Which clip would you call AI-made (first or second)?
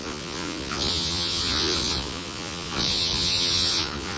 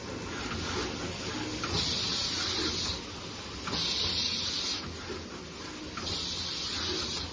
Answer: first